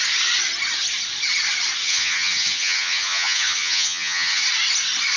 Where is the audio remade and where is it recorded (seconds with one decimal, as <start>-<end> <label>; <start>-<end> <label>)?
0.0-1.8 recorded; 1.8-4.4 remade; 4.4-5.2 recorded